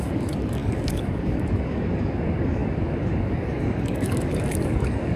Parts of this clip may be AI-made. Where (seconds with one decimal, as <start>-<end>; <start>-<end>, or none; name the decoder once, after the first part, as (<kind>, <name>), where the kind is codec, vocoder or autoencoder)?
0.0-5.2 (codec, DAC)

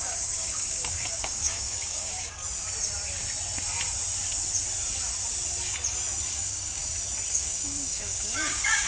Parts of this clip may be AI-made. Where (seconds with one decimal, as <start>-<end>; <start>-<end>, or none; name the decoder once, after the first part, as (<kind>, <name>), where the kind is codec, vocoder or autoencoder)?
0.0-2.4 (codec, DAC); 6.3-6.8; 7.3-8.9

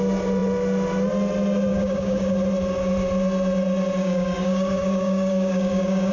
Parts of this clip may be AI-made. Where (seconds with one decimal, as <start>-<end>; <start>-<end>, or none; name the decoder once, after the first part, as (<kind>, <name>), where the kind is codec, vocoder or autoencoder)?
1.7-2.3 (codec, DAC); 4.0-6.1

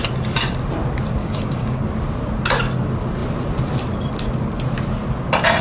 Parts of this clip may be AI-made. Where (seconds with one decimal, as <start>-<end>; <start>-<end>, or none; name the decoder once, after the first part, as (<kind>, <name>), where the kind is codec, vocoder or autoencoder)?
1.2-1.8 (codec, DAC)

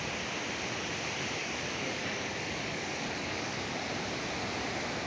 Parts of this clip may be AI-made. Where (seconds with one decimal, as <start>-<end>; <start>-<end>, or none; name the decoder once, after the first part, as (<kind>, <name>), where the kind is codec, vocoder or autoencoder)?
1.4-3.7 (codec, DAC)

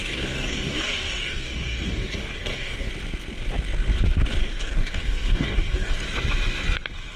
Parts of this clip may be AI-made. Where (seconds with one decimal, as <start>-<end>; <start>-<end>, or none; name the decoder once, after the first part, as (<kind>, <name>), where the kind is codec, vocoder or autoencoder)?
0.0-2.9 (codec, DAC); 4.4-5.9

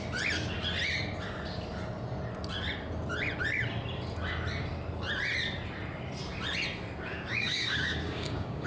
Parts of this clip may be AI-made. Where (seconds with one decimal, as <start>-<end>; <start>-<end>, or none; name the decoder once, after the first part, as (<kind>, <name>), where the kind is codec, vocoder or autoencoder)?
7.1-8.7 (codec, DAC)

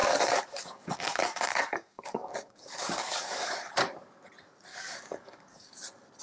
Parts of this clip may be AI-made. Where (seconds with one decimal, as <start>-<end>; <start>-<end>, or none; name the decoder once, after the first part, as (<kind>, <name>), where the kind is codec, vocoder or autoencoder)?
0.0-3.7 (codec, DAC); 4.7-5.8